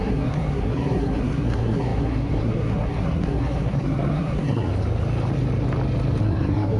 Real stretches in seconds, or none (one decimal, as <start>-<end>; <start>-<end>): 4.7-6.2